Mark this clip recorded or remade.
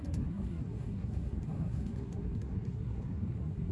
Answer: remade